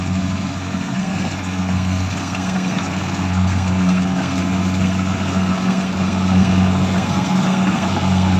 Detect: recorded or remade remade